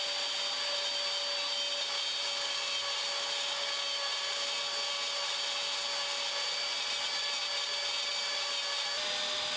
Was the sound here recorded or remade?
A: recorded